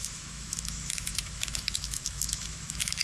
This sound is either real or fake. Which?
fake